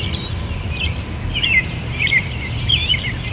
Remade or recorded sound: remade